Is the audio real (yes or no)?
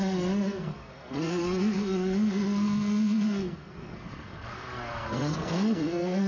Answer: no